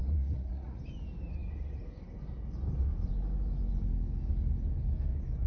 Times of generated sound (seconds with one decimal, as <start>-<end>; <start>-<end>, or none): 0.0-0.8